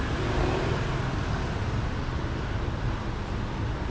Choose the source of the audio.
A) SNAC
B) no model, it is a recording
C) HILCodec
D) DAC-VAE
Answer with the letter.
B